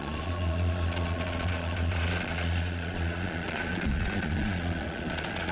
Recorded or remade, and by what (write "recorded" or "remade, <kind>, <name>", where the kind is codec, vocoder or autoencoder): remade, vocoder, Vocos